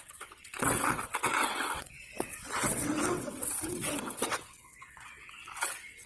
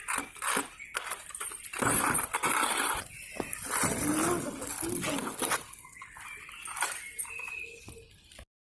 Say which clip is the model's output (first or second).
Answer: first